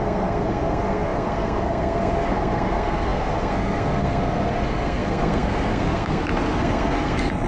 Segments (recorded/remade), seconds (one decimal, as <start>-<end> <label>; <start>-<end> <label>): 0.0-7.5 remade